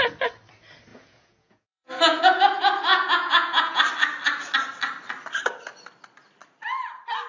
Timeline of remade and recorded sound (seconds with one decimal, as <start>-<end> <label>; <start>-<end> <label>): 0.0-0.9 recorded; 0.9-2.4 remade; 2.4-2.9 recorded; 2.9-3.8 remade; 3.8-7.3 recorded